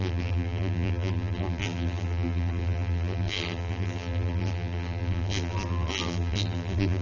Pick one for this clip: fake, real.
fake